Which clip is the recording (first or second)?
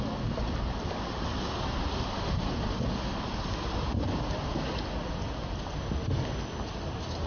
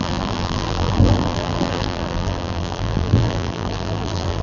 first